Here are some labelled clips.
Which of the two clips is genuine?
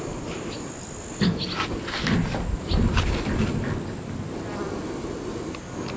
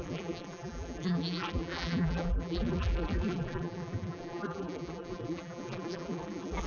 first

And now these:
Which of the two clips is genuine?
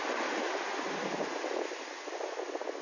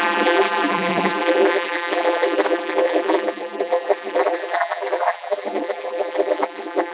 first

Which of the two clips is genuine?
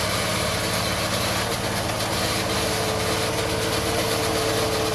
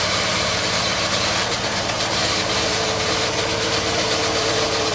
first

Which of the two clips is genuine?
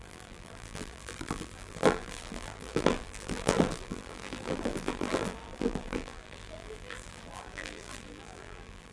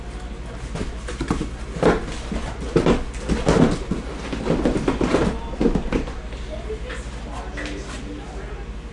second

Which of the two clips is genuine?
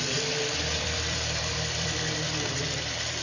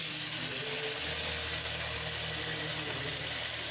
second